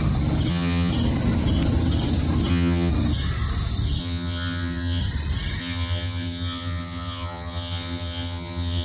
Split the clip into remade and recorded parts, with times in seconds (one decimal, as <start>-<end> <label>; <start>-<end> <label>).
0.0-0.5 recorded; 0.5-0.9 remade; 0.9-2.5 recorded; 2.5-2.9 remade; 2.9-4.0 recorded; 4.0-5.0 remade; 5.0-5.6 recorded; 5.6-8.8 remade